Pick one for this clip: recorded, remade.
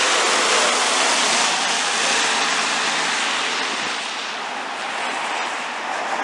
recorded